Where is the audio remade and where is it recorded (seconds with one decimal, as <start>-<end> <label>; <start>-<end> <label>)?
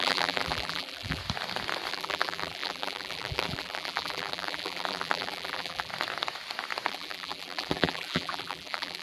0.0-1.2 remade; 1.2-1.9 recorded; 1.9-5.9 remade; 5.9-6.9 recorded; 6.9-9.0 remade